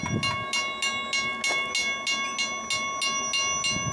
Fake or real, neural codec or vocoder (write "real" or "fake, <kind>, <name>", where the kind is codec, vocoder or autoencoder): real